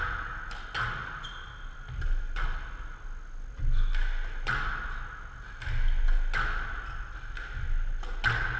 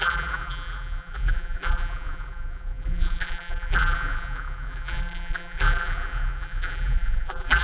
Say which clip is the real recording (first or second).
first